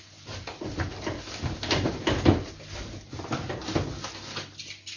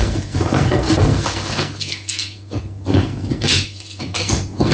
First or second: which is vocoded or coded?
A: second